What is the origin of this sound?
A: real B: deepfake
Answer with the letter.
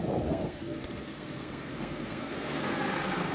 B